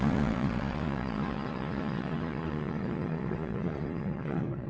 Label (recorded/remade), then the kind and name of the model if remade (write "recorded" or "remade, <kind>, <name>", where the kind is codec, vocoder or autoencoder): remade, vocoder, Vocos